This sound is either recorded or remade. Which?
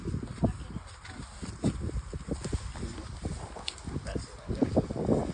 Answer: recorded